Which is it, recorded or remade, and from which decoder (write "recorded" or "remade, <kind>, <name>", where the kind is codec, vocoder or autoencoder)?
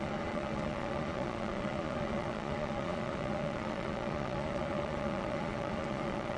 remade, vocoder, Vocos